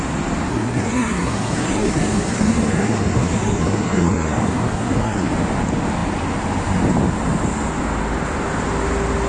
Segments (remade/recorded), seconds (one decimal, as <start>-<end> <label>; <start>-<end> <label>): 0.0-0.5 recorded; 0.5-5.3 remade; 5.3-9.3 recorded